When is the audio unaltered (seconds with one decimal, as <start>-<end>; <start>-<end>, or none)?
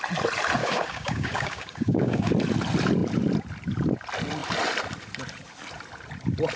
0.0-0.6; 2.3-6.6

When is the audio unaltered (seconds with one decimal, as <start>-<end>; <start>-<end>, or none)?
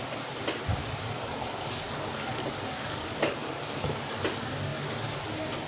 0.0-0.7; 4.1-5.7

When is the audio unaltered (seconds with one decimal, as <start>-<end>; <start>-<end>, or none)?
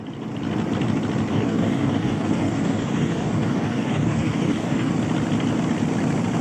0.0-1.3; 4.9-6.4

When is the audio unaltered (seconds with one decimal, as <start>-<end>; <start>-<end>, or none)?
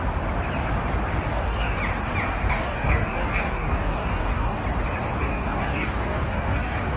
0.0-1.3; 1.8-2.5; 4.6-5.2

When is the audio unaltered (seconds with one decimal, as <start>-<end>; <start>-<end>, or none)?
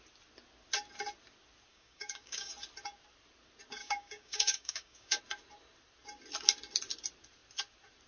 0.0-1.7; 2.5-3.8; 5.2-8.1